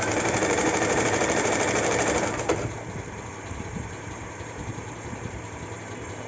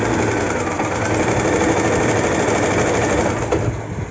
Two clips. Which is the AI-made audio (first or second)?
first